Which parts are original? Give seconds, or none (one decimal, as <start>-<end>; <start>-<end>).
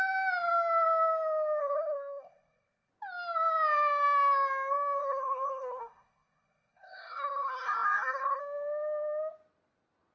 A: 0.0-1.6; 2.9-5.0; 8.4-10.1